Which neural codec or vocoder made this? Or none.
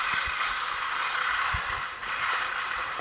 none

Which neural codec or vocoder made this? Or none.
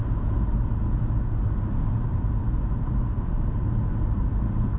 none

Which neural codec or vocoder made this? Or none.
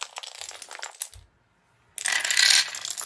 none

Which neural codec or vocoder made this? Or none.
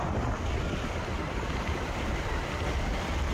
none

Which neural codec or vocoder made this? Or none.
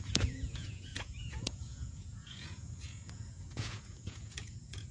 vocoder, Vocos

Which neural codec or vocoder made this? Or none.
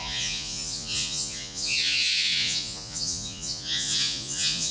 vocoder, Vocos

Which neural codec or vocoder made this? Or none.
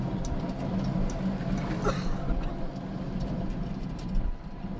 none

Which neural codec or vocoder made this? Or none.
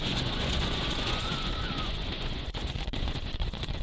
vocoder, Vocos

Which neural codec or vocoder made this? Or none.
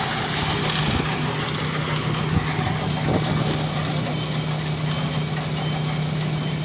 none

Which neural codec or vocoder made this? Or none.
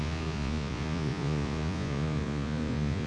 vocoder, Vocos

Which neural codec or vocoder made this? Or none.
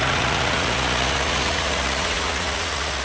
vocoder, Vocos